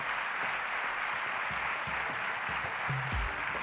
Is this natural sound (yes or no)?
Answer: yes